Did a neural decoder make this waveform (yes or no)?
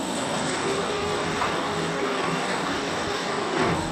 yes